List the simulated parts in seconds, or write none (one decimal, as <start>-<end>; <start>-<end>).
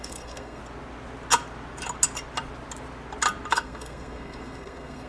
0.0-0.6; 3.5-5.1